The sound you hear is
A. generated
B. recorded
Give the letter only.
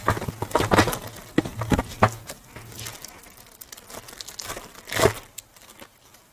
B